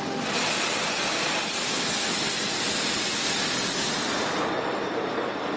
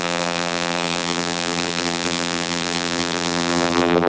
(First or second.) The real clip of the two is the first